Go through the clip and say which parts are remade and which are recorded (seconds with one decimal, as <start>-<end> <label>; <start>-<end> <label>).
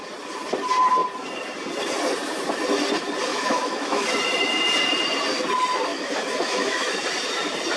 0.0-3.3 recorded; 3.3-4.2 remade; 4.2-5.9 recorded; 5.9-7.0 remade; 7.0-7.8 recorded